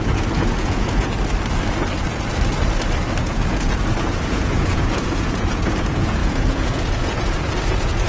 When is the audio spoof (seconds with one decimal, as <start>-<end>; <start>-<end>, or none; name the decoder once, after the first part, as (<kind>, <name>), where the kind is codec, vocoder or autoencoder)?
0.0-1.1 (vocoder, Vocos); 3.2-8.1